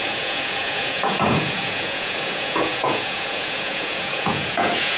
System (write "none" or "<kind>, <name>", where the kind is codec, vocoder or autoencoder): vocoder, Vocos